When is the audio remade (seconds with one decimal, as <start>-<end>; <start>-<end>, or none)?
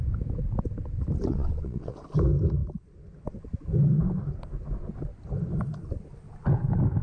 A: 1.3-2.0